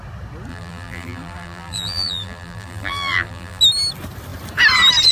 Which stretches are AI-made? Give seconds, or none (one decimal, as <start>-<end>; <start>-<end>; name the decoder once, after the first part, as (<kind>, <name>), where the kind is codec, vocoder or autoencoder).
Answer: 0.5-3.6 (vocoder, BigVGAN v2)